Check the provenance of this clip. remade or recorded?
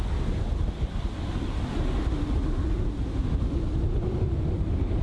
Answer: recorded